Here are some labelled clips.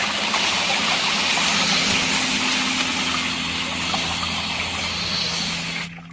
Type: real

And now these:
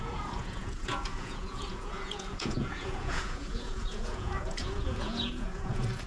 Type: fake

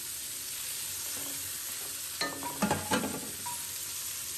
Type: real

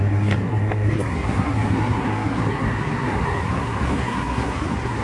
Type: fake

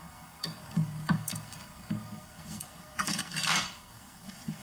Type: fake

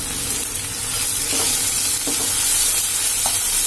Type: real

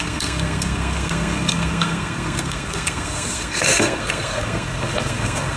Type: fake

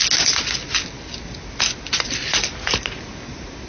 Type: real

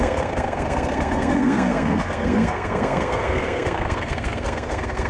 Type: fake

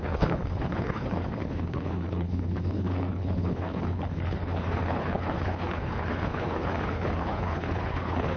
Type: fake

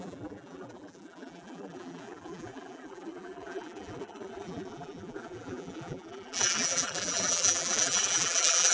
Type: fake